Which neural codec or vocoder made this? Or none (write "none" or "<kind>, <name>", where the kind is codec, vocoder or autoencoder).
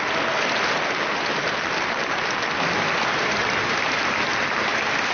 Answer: none